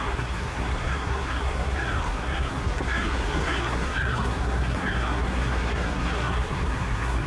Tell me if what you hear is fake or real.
fake